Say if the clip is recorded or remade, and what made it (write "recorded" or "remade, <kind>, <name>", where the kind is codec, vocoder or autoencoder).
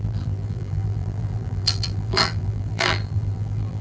remade, vocoder, BigVGAN v2